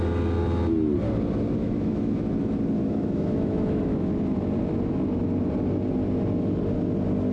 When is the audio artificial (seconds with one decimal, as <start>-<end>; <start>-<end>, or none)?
1.6-2.1; 2.8-3.8